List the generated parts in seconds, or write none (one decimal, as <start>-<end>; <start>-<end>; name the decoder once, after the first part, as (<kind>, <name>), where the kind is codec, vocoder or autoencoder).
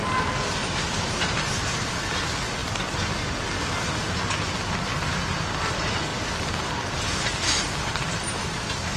0.6-2.0 (vocoder, BigVGAN v2); 8.4-9.0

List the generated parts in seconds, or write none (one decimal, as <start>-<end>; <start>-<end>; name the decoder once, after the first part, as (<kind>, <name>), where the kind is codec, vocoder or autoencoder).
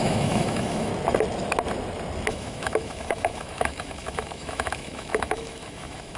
0.0-0.9 (autoencoder, DAC-VAE); 2.3-6.2